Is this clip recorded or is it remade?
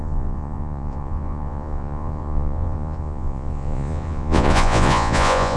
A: remade